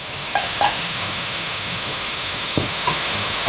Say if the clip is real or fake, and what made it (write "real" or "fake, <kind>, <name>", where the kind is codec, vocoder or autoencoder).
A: fake, autoencoder, DAC-VAE